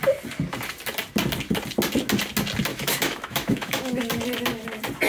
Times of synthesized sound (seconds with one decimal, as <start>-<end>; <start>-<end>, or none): 2.7-4.1